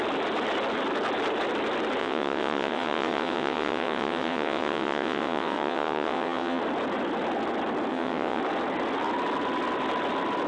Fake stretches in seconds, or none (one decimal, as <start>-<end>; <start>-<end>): 2.0-6.6; 7.9-8.4